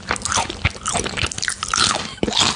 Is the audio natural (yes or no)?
yes